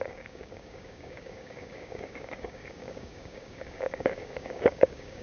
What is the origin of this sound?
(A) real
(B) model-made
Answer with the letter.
B